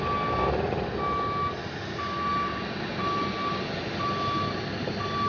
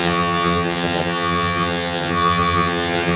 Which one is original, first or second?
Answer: first